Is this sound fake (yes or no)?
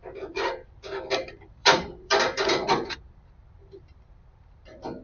yes